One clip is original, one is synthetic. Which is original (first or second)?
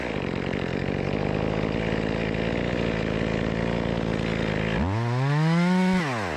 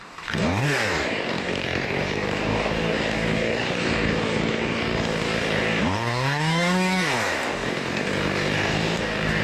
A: first